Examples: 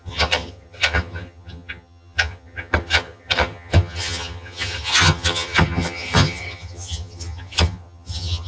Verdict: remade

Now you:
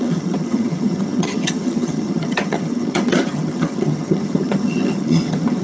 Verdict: remade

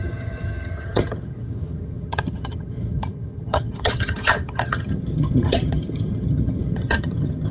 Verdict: remade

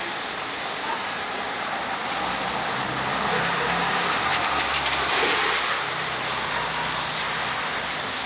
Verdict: recorded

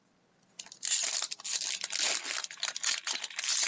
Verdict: recorded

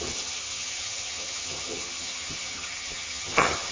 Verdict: remade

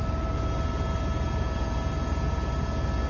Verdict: recorded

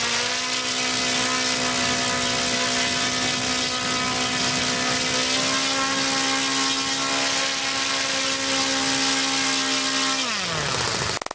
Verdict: recorded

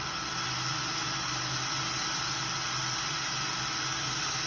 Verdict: recorded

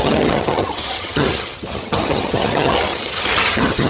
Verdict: remade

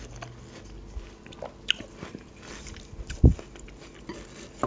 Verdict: recorded